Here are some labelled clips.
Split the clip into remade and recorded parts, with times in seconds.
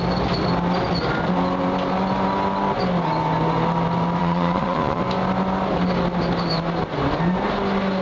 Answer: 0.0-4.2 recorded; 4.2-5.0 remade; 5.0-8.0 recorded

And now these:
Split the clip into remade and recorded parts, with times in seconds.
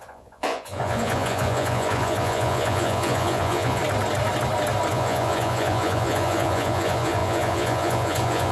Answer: 0.0-3.8 remade; 3.8-4.9 recorded; 4.9-8.5 remade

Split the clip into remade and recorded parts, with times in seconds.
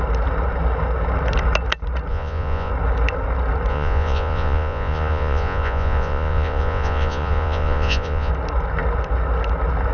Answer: 0.0-2.1 recorded; 2.1-2.7 remade; 2.7-3.7 recorded; 3.7-8.3 remade; 8.3-9.9 recorded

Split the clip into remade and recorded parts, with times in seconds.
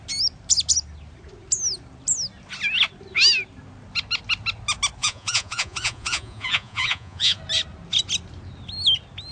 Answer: 0.0-5.0 recorded; 5.0-7.4 remade; 7.4-9.3 recorded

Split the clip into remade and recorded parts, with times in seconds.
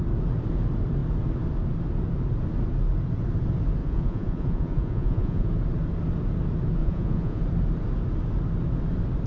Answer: 0.0-3.8 recorded; 3.8-5.5 remade; 5.5-6.8 recorded; 6.8-7.4 remade; 7.4-9.3 recorded